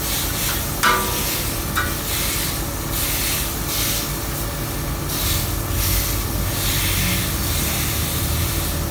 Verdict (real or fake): real